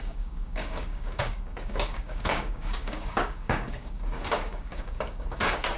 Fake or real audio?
fake